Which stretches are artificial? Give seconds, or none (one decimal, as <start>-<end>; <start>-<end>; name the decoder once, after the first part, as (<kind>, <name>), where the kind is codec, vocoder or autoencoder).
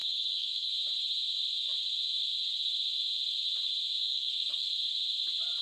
0.0-0.7 (codec, SNAC); 4.0-4.7